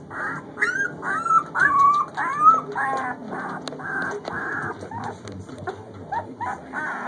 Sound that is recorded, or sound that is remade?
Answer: recorded